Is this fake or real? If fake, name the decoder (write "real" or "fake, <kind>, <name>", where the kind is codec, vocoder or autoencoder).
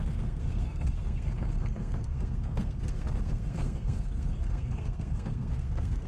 fake, codec, SNAC